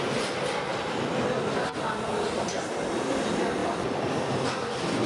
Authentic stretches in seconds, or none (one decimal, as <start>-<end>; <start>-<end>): 0.0-5.1